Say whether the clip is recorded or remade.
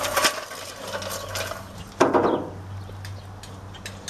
recorded